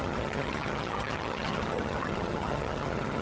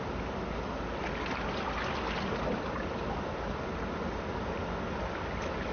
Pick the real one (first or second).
second